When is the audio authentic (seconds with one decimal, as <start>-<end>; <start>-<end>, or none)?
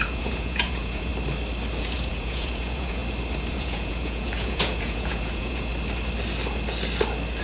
1.1-1.8; 3.0-3.5; 5.7-7.4